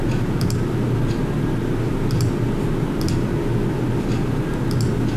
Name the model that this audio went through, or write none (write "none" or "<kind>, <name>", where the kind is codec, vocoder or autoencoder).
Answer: none